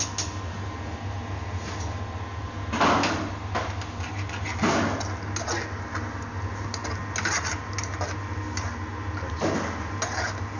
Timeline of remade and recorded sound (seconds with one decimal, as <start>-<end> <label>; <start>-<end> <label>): 0.0-10.6 recorded